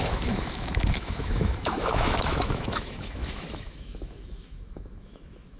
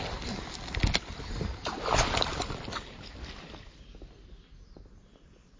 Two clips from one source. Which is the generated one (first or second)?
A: first